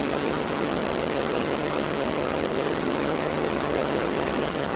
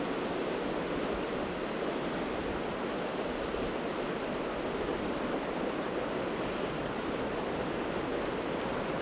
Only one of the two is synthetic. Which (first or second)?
first